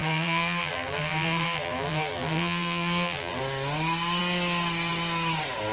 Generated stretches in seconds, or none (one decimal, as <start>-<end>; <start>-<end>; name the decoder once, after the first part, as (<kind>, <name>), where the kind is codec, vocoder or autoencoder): 0.0-3.4 (vocoder, BigVGAN v2)